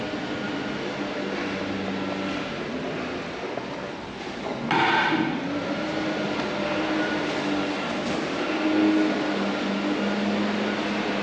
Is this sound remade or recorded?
recorded